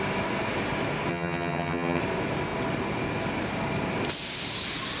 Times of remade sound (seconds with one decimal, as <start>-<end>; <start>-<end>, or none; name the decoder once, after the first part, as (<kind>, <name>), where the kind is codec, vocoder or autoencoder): 1.1-2.0 (vocoder, HiFi-GAN)